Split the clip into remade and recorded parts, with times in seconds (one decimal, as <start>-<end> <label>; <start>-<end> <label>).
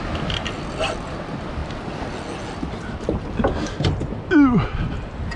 0.0-5.4 recorded